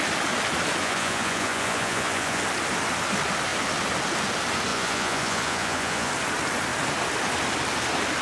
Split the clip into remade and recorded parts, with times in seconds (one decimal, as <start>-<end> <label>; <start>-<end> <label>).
0.0-0.8 recorded; 0.8-2.4 remade; 2.4-4.7 recorded; 4.7-6.1 remade; 6.1-8.2 recorded